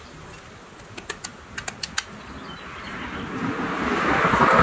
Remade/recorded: recorded